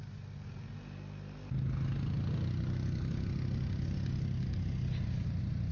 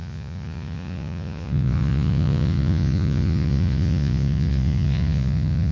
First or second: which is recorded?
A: first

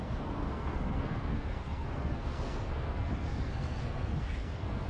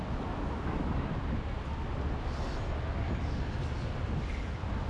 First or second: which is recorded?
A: second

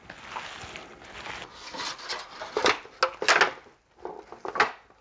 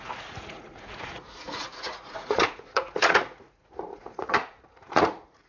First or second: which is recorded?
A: first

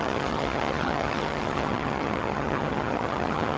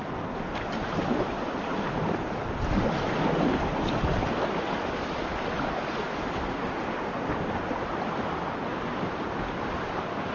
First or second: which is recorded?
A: second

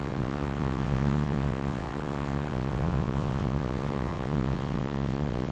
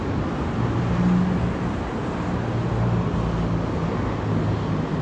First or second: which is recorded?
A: second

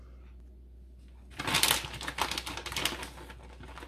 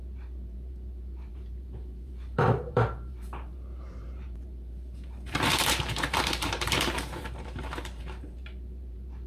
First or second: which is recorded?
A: first